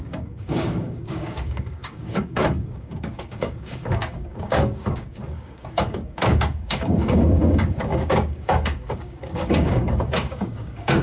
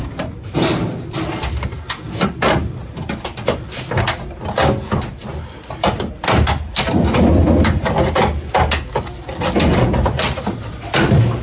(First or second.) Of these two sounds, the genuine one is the second